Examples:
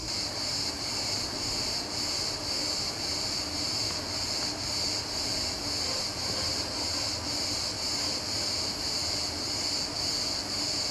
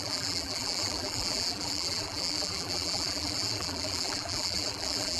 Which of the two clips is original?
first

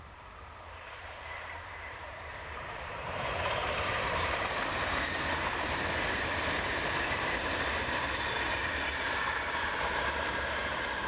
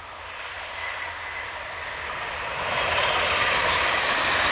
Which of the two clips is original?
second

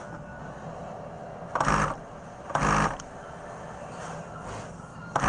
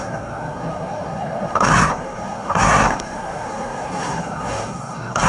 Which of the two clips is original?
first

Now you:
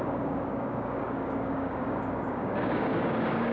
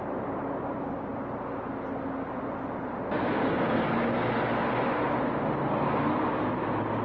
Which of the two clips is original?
second